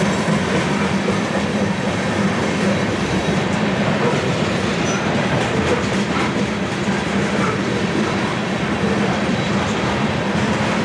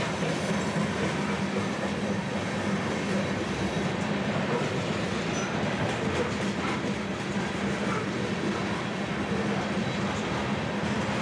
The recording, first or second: second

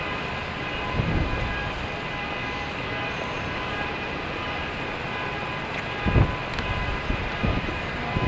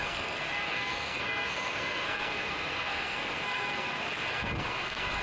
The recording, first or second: first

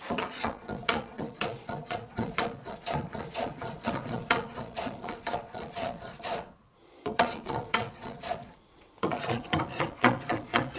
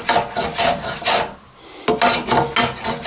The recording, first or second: second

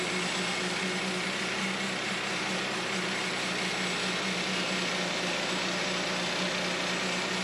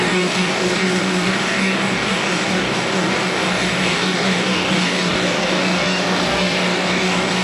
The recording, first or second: first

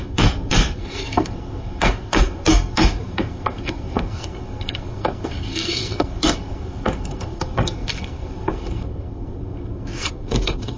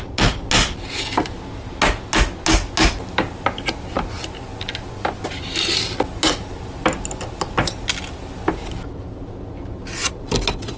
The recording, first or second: second